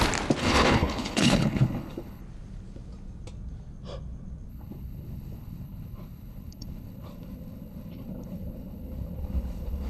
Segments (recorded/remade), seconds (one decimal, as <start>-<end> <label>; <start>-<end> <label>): 0.0-0.4 recorded; 0.4-2.2 remade; 2.2-4.5 recorded; 4.5-9.9 remade